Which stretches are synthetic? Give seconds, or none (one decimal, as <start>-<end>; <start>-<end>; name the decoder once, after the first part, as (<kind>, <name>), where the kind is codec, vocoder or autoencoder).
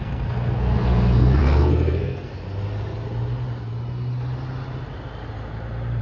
0.0-2.3 (codec, SNAC)